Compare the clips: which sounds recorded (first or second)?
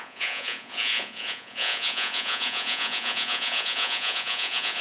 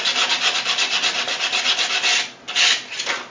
second